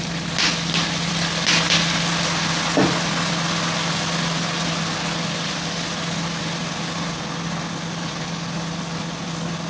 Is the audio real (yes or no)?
yes